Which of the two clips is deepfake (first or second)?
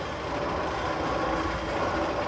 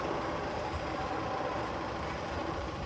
second